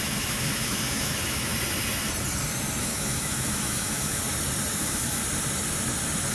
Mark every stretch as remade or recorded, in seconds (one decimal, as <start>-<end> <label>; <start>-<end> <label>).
0.0-1.5 remade; 1.5-2.8 recorded; 2.8-4.2 remade; 4.2-4.8 recorded; 4.8-5.2 remade; 5.2-6.3 recorded